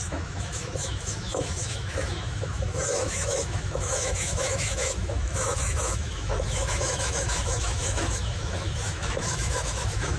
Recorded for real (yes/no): no